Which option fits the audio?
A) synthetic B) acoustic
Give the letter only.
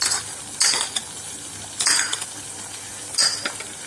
B